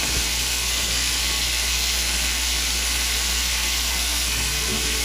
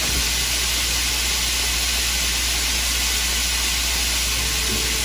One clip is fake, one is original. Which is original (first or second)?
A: second